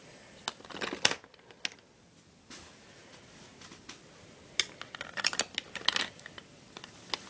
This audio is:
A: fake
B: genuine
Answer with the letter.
B